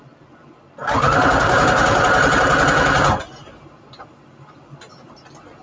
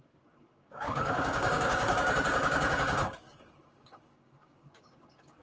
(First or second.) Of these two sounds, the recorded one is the first